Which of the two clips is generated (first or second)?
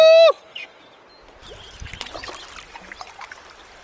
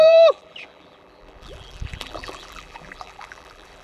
second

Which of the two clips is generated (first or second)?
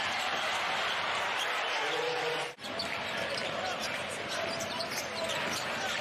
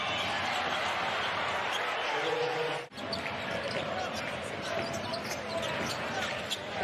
first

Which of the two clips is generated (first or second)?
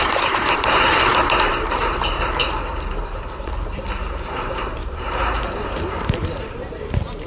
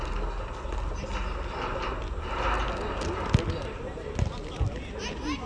first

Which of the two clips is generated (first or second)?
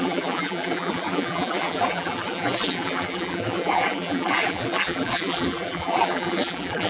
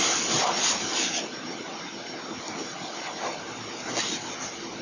first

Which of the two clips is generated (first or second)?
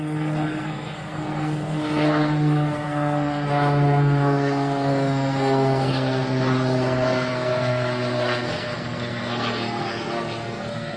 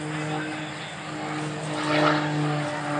first